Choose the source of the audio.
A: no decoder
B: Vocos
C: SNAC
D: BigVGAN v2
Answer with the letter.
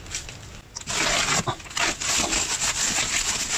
A